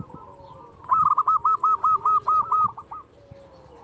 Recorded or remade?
recorded